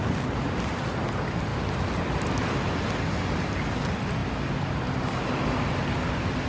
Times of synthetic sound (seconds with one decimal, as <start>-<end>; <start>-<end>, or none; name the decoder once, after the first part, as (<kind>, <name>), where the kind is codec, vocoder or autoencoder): none